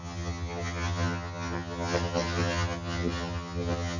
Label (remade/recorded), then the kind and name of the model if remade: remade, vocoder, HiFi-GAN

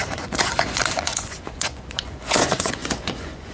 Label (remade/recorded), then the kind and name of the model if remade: remade, vocoder, Vocos